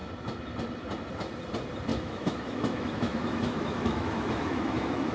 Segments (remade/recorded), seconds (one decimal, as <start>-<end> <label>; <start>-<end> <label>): 0.0-1.9 recorded; 1.9-5.1 remade